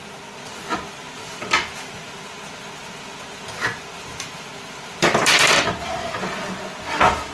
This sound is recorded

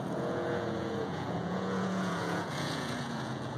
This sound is remade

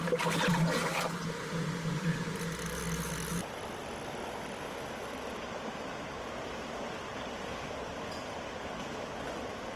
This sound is recorded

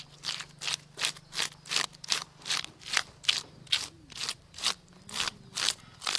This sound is recorded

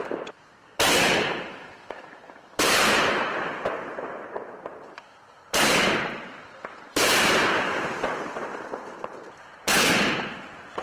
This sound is remade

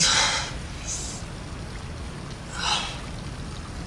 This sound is recorded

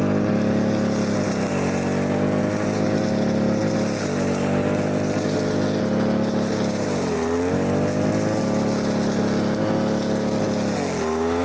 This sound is recorded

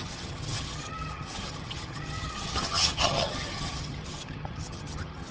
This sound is remade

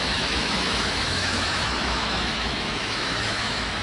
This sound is remade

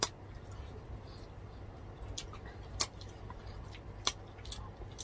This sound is recorded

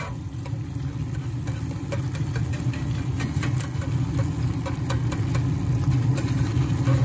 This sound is recorded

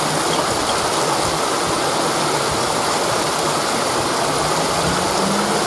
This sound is recorded